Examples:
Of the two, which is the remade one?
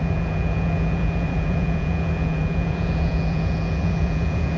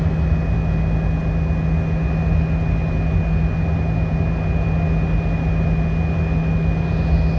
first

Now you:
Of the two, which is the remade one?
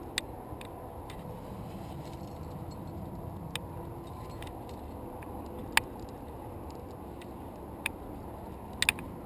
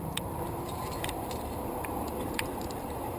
second